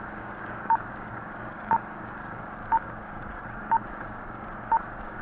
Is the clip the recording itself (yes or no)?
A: no